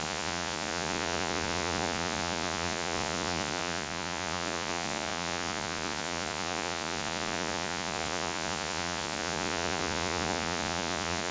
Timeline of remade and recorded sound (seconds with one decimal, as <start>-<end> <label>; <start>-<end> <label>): 0.0-11.3 remade

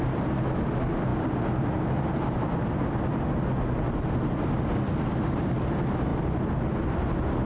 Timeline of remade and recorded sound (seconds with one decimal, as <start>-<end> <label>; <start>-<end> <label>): 0.0-7.5 recorded

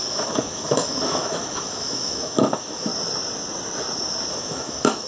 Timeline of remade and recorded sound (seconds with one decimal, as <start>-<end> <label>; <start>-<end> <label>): 0.0-2.9 remade; 2.9-4.3 recorded; 4.3-5.1 remade

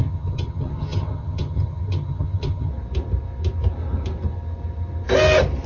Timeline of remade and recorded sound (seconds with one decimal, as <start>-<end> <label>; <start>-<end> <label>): 0.0-2.7 remade; 2.7-5.7 recorded

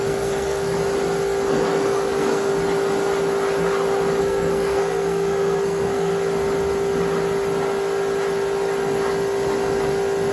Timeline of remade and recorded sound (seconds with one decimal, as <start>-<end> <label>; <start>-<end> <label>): 0.0-0.8 remade; 0.8-1.5 recorded; 1.5-2.5 remade; 2.5-4.2 recorded; 4.2-6.1 remade; 6.1-10.3 recorded

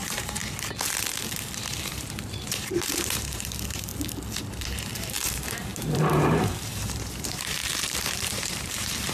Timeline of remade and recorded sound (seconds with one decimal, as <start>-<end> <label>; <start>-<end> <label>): 0.0-0.4 remade; 0.4-1.8 recorded; 1.8-3.9 remade; 3.9-4.4 recorded; 4.4-9.1 remade